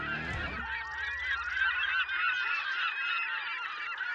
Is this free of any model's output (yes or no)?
yes